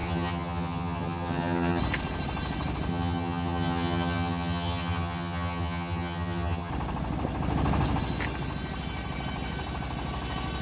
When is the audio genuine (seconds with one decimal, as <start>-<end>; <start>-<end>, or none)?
1.8-2.9; 6.7-10.6